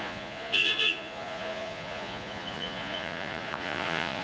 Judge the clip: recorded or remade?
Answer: remade